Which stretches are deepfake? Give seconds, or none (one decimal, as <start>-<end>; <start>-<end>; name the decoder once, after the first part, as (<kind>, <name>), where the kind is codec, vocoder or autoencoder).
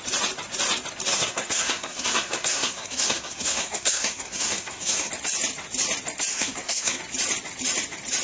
1.1-5.1 (codec, SNAC); 6.3-7.0